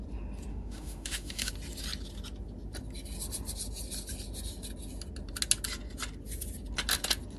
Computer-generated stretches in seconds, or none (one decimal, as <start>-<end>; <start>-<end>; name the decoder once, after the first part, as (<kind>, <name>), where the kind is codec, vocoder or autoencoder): 0.5-1.5 (autoencoder, DAC-VAE)